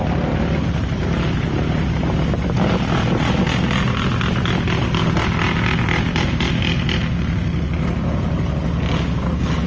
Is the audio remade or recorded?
recorded